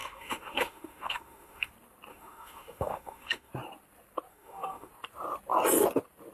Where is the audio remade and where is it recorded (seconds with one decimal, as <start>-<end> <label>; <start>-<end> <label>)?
0.0-1.7 remade; 1.7-2.1 recorded; 2.1-3.5 remade; 3.5-4.3 recorded; 4.3-4.9 remade; 4.9-6.3 recorded